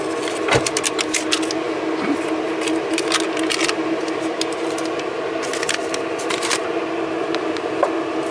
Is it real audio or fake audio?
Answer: real